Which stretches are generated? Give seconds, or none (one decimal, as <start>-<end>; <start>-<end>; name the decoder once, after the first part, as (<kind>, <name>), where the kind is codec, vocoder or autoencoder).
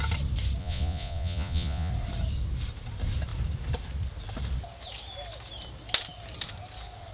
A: 0.6-1.9 (vocoder, Vocos)